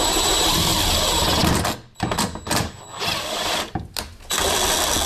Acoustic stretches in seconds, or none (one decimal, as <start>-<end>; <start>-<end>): 0.0-5.1